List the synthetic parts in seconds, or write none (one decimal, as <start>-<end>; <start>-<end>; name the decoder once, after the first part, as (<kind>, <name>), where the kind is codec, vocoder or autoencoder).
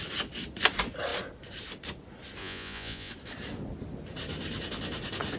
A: 2.4-3.1 (vocoder, Vocos)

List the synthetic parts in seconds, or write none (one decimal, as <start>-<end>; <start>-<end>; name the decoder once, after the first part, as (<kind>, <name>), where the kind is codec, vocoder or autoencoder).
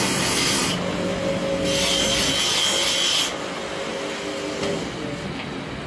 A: none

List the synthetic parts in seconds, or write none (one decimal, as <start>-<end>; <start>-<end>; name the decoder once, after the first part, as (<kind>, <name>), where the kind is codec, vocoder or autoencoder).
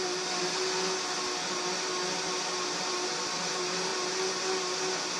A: none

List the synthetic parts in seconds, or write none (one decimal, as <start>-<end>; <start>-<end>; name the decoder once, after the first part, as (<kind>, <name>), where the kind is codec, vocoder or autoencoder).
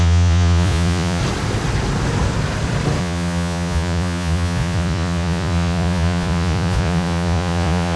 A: 0.0-1.2 (vocoder, Vocos); 3.0-8.0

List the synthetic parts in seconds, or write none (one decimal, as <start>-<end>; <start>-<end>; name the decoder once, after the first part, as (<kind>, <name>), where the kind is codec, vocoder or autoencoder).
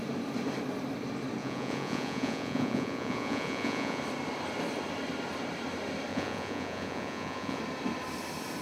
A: 1.4-4.0 (vocoder, Vocos); 6.1-7.6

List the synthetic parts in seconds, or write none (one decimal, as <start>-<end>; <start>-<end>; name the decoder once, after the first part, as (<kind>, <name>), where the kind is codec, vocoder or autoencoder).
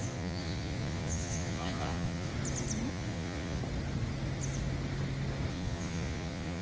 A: 0.0-2.3 (vocoder, Vocos); 2.9-3.6; 5.5-6.6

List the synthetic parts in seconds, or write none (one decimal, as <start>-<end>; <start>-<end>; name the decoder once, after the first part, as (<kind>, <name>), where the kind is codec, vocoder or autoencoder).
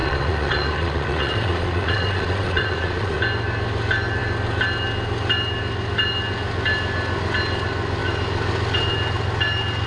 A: 0.0-3.2 (vocoder, Vocos)